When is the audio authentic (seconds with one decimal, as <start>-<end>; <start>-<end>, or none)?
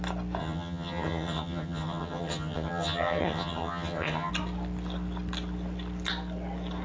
0.0-0.4; 4.3-6.8